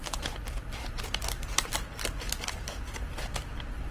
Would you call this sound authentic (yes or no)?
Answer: no